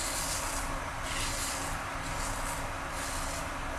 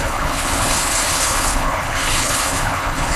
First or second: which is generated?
second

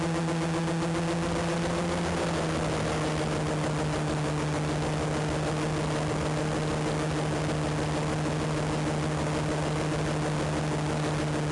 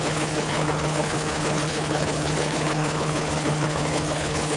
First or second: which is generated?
second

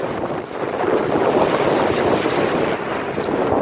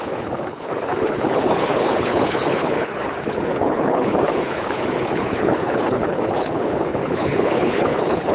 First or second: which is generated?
second